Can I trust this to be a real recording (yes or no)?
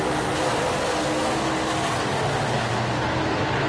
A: yes